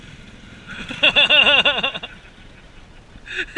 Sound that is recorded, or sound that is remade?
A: recorded